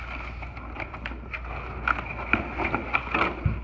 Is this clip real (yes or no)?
yes